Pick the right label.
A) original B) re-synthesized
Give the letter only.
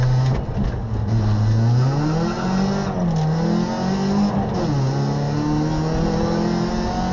A